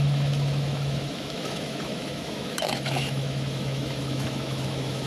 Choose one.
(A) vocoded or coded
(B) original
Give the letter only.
A